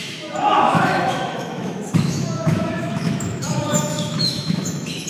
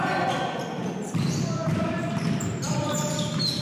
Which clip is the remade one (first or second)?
first